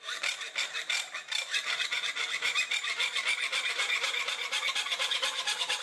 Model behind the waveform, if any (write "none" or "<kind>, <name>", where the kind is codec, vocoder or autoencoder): none